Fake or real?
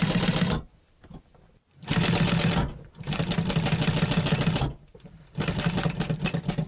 real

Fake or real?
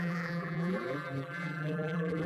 fake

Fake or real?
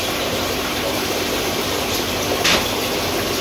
fake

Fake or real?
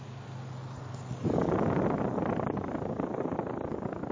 real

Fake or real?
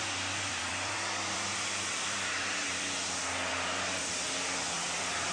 fake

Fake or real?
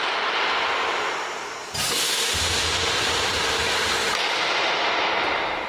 real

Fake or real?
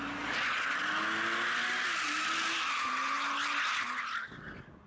real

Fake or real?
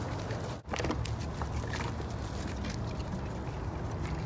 real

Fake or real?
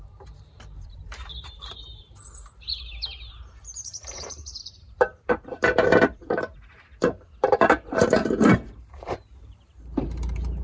fake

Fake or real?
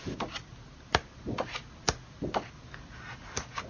real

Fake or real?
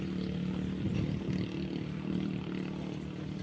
fake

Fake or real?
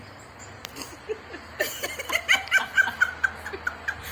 real